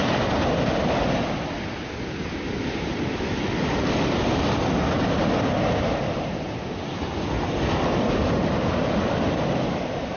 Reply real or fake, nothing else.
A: real